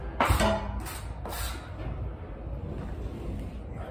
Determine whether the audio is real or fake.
real